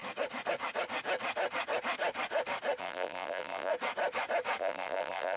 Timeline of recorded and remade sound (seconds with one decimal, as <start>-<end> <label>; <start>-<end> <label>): 0.0-2.8 recorded; 2.8-3.7 remade; 3.7-4.6 recorded; 4.6-5.4 remade